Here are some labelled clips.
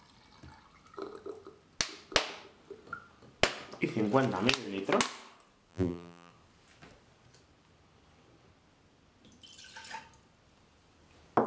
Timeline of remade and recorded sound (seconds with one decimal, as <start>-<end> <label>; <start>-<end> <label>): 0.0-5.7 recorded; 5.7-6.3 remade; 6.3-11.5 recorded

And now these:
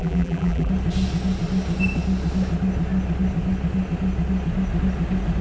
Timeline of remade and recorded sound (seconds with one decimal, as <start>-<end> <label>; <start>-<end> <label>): 0.0-0.7 remade; 0.7-5.4 recorded

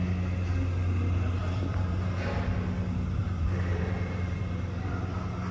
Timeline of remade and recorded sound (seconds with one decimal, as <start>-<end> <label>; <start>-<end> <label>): 0.0-1.4 recorded; 1.4-2.1 remade; 2.1-3.2 recorded; 3.2-4.8 remade; 4.8-5.5 recorded

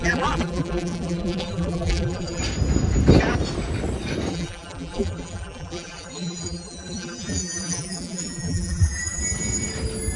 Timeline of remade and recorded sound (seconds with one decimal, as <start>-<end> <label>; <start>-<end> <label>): 0.0-2.4 remade; 2.4-4.3 recorded; 4.3-9.2 remade; 9.2-10.2 recorded